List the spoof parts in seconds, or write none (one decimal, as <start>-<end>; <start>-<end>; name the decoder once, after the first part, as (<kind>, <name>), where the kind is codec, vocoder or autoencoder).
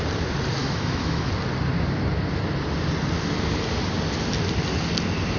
0.6-1.3 (autoencoder, DAC-VAE)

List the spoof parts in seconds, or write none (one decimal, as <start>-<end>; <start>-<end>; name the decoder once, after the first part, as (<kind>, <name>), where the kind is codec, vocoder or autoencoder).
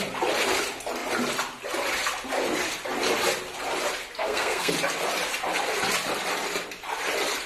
4.2-4.7 (codec, SNAC)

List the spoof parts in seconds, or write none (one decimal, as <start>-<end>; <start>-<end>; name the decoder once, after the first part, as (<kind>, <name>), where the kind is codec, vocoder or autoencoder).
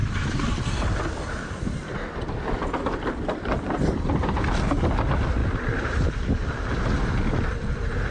0.0-1.0 (vocoder, BigVGAN v2); 5.4-6.6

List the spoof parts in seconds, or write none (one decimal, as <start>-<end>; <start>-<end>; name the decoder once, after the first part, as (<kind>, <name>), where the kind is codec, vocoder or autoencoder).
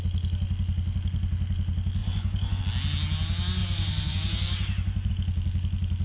2.0-2.6 (vocoder, Vocos); 3.6-5.1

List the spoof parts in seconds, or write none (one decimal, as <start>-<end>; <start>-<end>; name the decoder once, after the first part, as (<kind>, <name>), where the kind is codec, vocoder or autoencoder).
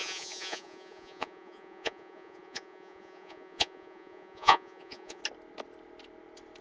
0.0-5.2 (vocoder, Vocos)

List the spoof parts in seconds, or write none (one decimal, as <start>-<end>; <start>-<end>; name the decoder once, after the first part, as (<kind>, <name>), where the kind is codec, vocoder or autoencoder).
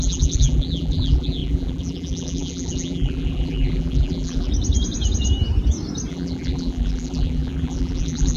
0.0-4.5 (vocoder, BigVGAN v2); 6.1-8.4